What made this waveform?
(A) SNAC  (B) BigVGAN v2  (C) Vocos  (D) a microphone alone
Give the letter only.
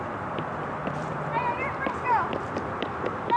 B